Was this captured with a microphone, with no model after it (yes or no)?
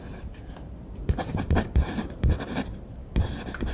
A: no